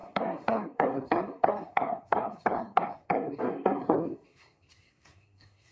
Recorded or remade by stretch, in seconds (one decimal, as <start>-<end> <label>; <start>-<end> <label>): 0.0-5.7 remade